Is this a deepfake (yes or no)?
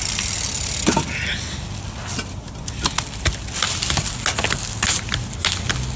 no